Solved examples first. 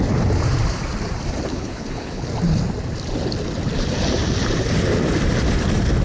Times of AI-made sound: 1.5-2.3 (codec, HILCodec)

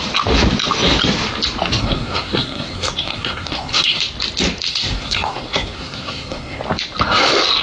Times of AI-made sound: 1.8-4.0 (codec, SNAC); 4.7-6.6

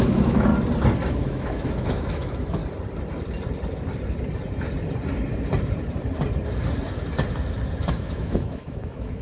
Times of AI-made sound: 0.0-0.5 (autoencoder, DAC-VAE); 1.1-2.6; 7.9-9.2

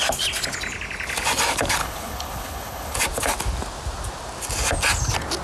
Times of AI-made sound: 1.8-3.0 (codec, HILCodec)

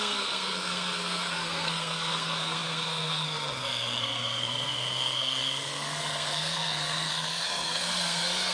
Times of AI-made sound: 0.0-8.5 (codec, SNAC)